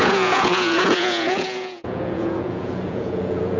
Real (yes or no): no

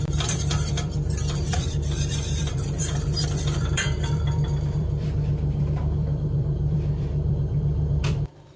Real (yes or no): no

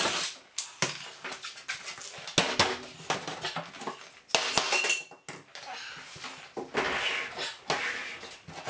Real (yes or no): yes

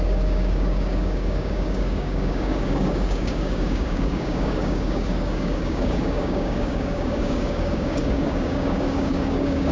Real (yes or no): no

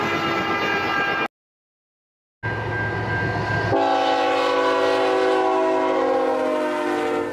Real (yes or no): yes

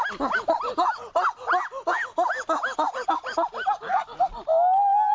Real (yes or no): yes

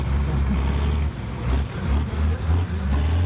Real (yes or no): yes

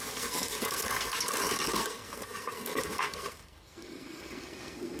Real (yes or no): no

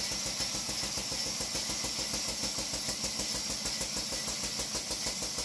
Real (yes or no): yes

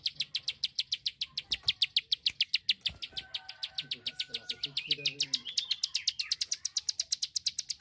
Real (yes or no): yes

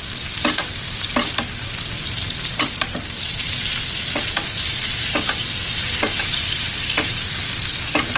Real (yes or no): no